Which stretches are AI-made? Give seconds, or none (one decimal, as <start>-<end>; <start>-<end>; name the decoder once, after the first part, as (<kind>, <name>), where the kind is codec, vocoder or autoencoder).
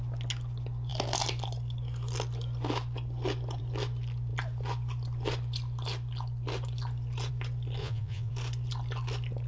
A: 7.8-8.3 (vocoder, Vocos)